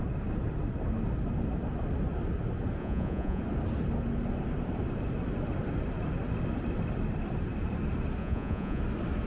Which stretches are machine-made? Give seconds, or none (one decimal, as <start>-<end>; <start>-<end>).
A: 2.8-3.4; 8.2-8.8